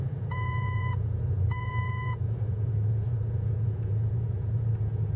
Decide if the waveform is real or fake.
fake